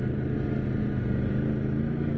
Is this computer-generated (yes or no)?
no